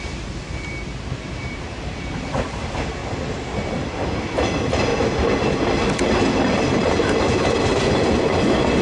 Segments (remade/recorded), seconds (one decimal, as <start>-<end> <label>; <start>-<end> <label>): 0.0-4.9 remade; 4.9-6.6 recorded; 6.6-7.7 remade; 7.7-8.8 recorded